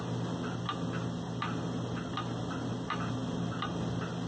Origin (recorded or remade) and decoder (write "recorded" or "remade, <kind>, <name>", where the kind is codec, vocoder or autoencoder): recorded